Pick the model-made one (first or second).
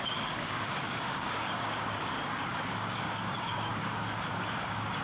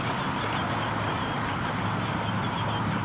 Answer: first